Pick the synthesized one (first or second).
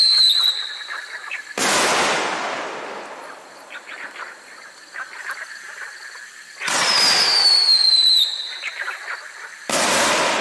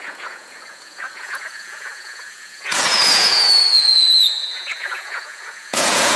second